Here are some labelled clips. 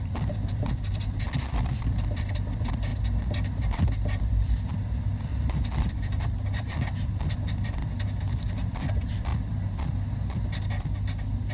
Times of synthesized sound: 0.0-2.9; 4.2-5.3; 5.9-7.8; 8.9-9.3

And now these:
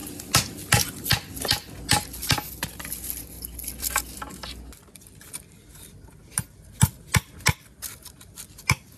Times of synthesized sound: none

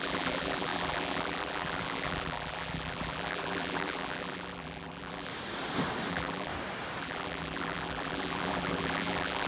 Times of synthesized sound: 0.0-5.3; 6.1-6.5; 7.0-9.5

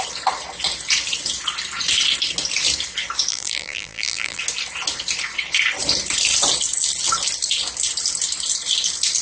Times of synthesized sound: 3.3-4.4

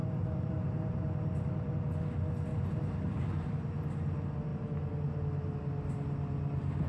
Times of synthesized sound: 0.0-1.7; 2.5-3.5